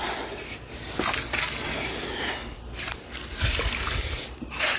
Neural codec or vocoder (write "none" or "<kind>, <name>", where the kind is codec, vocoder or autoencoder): none